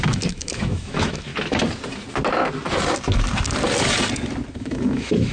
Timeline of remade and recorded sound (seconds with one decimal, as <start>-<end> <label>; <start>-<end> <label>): 0.0-1.3 remade; 1.3-4.5 recorded; 4.5-5.3 remade